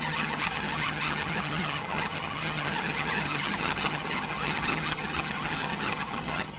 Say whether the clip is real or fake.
fake